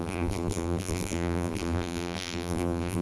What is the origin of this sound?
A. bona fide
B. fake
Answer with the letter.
B